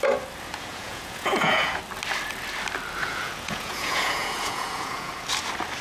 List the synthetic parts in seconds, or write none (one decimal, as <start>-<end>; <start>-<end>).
0.7-1.8; 3.0-5.1